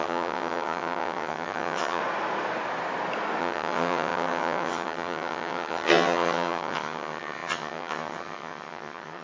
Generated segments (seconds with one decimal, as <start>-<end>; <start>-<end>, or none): 0.0-2.0; 3.4-9.2